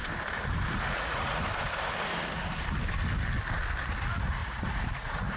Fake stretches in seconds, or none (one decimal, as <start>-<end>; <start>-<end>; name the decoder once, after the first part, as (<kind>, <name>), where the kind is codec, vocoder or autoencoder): 0.9-1.4 (vocoder, Vocos); 4.0-5.4